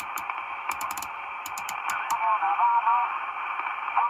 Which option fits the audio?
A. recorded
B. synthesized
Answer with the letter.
B